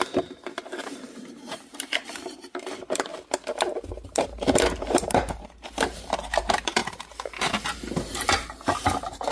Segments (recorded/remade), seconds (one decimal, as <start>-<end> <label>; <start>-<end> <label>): 0.0-3.1 remade; 3.1-4.0 recorded; 4.0-9.3 remade